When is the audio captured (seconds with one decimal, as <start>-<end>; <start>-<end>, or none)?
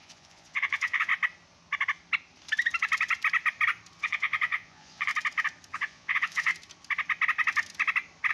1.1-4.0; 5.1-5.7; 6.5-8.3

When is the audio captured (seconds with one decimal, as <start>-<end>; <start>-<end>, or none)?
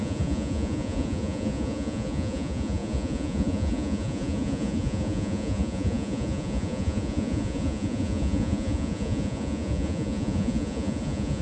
none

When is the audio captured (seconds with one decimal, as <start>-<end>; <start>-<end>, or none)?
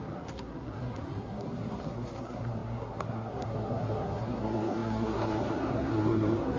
none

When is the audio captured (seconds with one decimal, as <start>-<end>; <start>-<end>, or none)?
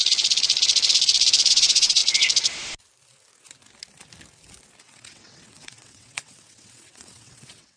0.0-1.5; 2.0-4.8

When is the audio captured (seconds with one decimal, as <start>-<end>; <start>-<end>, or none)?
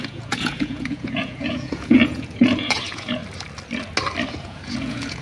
3.2-4.3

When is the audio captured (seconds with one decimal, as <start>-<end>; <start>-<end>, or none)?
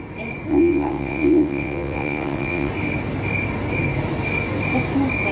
0.0-0.5; 2.7-5.3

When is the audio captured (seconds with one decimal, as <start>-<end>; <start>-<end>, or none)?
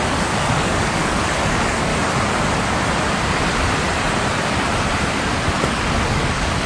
1.9-5.7